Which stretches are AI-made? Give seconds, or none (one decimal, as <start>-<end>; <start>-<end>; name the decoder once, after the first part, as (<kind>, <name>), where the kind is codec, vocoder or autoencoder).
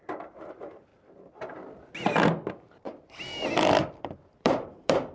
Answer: 0.0-0.9 (vocoder, BigVGAN v2); 4.0-5.1